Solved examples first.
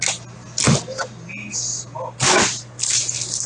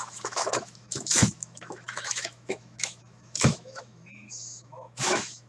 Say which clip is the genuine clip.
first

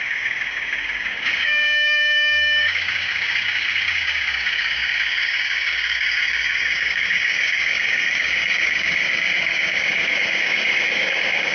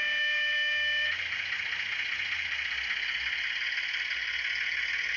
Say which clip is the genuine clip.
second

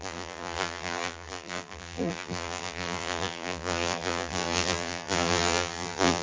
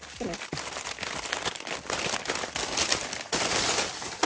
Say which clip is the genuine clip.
second